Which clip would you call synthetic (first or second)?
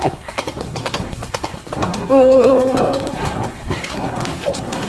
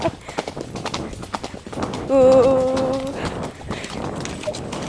first